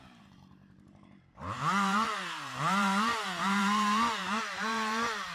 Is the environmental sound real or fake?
fake